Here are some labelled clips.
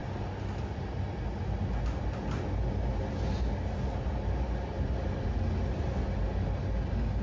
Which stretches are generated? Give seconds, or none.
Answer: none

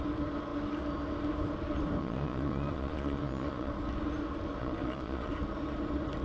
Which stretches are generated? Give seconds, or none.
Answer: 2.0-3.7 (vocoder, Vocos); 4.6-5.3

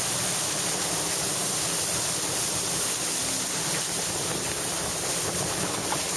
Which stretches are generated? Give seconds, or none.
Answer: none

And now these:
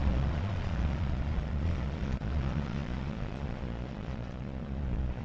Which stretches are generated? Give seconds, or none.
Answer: 0.0-5.2 (vocoder, Vocos)

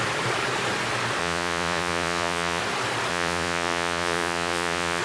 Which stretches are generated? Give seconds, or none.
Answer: 1.2-2.6 (vocoder, Vocos); 3.1-5.0

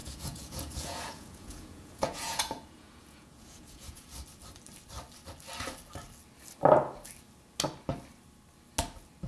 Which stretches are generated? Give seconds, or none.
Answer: 0.0-4.1 (vocoder, Vocos)